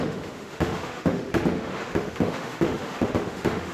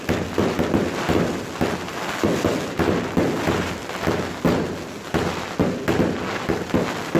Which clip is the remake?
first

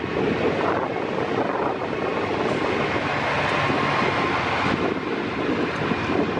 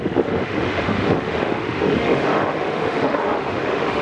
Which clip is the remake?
second